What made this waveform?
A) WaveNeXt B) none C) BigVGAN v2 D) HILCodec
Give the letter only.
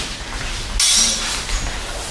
B